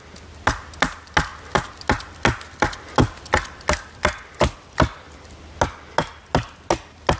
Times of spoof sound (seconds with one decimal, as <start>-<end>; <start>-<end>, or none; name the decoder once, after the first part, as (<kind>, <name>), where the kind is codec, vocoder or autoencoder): none